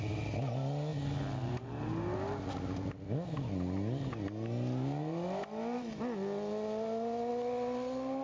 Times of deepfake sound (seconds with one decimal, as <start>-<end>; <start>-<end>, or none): 5.4-7.3